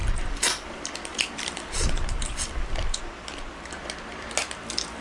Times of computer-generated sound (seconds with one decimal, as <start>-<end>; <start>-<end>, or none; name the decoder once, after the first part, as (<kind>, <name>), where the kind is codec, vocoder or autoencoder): 0.0-3.0 (vocoder, BigVGAN v2)